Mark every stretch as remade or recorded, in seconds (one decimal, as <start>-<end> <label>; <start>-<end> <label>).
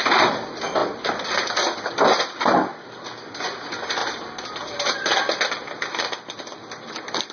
0.0-7.3 recorded